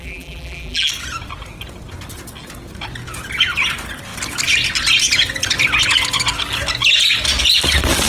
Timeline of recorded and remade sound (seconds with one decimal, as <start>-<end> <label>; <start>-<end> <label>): 0.0-0.9 remade; 0.9-8.1 recorded